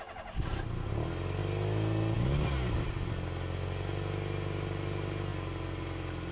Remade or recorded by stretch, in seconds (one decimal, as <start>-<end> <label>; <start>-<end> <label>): 0.0-6.3 recorded